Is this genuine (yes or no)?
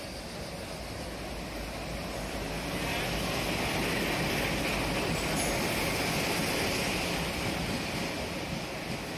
yes